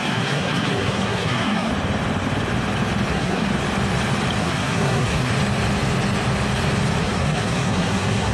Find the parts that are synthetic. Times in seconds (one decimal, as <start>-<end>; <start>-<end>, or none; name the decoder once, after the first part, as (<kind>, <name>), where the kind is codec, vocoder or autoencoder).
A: 0.0-1.7 (codec, SNAC); 3.1-3.5; 4.4-5.3; 7.0-8.3